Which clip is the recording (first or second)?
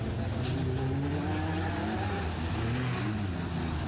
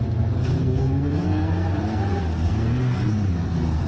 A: first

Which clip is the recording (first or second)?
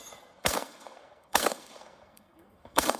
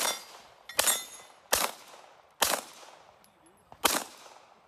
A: second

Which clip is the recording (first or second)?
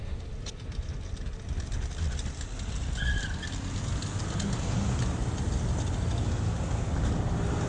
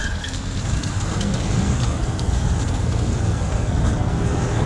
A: first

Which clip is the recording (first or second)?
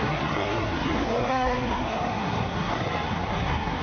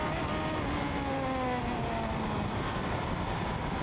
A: second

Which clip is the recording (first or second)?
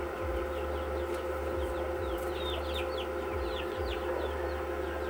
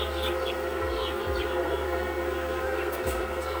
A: first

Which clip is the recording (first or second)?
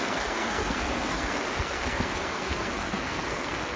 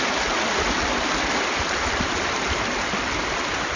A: second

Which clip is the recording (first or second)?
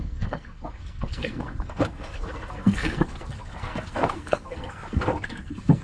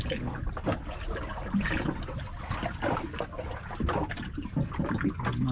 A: second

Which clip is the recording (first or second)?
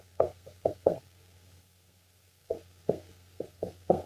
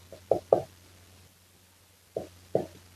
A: second